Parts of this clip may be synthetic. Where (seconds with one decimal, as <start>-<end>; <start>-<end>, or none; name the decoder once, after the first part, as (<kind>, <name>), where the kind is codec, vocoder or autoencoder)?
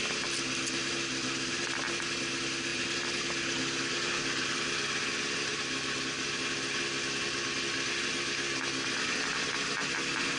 none